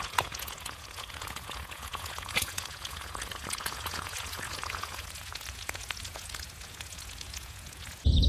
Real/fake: fake